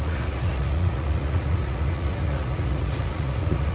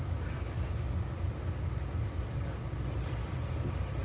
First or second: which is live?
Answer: second